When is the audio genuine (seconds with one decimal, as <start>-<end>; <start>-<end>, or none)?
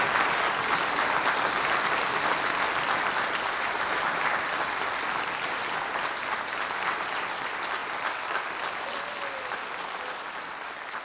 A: 0.0-11.0